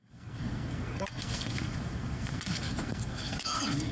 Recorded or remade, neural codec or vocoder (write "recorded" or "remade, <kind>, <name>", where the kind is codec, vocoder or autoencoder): remade, codec, SNAC